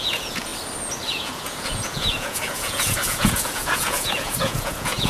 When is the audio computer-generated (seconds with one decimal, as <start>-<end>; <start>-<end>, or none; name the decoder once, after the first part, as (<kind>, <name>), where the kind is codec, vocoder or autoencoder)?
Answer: 0.0-0.5 (vocoder, Vocos); 1.1-5.1